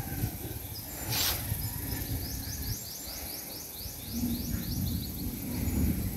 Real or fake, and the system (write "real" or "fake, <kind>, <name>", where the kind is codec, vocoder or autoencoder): real